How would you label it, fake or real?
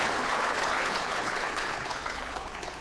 fake